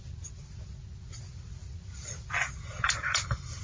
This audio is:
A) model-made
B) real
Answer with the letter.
B